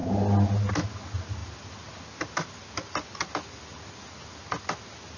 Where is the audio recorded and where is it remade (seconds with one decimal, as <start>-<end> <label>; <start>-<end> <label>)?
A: 0.0-5.2 recorded